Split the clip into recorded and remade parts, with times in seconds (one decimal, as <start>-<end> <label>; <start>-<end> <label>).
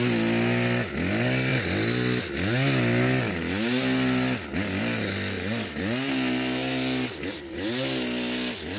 0.0-8.8 recorded